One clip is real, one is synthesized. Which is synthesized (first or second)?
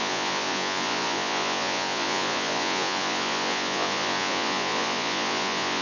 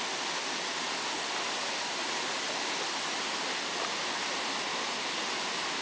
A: first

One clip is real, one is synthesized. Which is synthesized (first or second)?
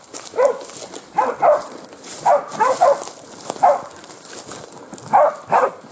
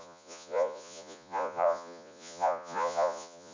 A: second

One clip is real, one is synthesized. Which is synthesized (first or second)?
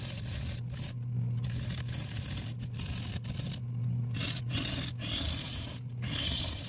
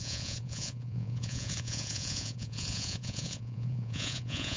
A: second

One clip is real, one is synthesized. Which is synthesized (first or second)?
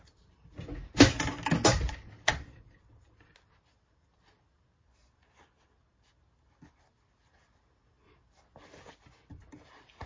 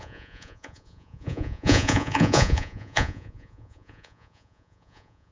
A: second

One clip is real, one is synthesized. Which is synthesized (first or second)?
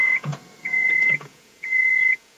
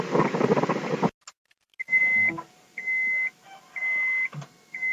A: first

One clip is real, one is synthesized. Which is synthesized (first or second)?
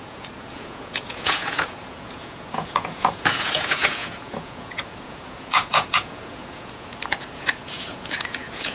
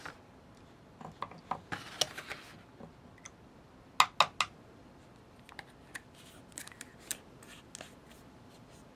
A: first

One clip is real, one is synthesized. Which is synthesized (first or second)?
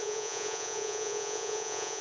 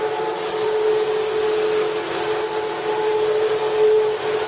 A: first